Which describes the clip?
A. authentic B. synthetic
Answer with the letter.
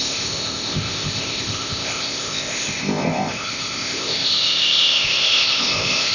B